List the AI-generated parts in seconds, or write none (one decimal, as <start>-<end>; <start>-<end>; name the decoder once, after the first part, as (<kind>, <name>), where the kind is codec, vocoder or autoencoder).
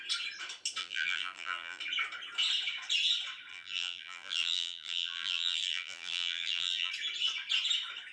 0.8-1.8 (vocoder, BigVGAN v2); 3.5-6.9